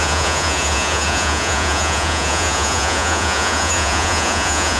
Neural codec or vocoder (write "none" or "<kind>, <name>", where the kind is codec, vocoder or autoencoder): vocoder, Vocos